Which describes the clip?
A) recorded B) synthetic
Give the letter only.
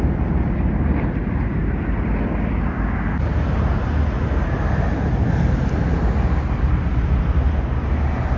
A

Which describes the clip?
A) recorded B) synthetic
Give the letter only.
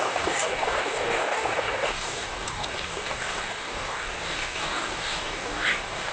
B